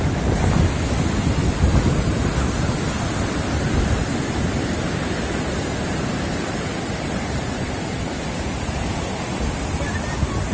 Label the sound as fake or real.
real